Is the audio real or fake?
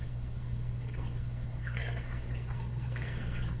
fake